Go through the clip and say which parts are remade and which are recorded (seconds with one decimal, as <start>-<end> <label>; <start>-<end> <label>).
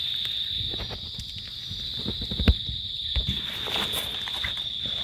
0.0-1.2 remade; 1.2-1.9 recorded; 1.9-4.2 remade; 4.2-5.0 recorded